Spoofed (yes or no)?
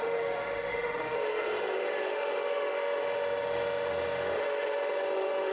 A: yes